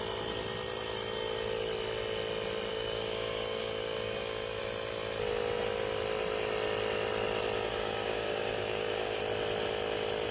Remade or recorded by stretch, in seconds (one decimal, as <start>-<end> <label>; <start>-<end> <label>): 0.0-2.7 recorded; 2.7-4.6 remade; 4.6-7.7 recorded; 7.7-9.2 remade; 9.2-10.3 recorded